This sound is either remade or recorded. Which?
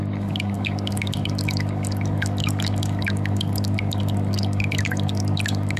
remade